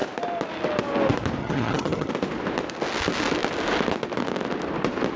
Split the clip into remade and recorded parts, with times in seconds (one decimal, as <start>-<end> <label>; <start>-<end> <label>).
0.0-1.4 recorded; 1.4-2.1 remade; 2.1-5.2 recorded